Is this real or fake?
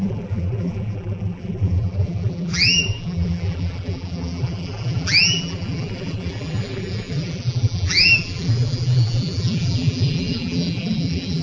fake